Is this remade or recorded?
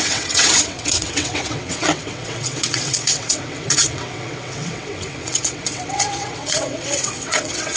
remade